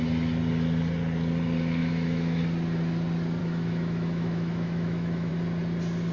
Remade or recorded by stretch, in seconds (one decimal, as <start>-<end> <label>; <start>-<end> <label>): 0.0-1.8 recorded; 1.8-2.4 remade; 2.4-3.4 recorded; 3.4-5.3 remade; 5.3-6.1 recorded